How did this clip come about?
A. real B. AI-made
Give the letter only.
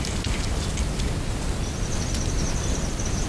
A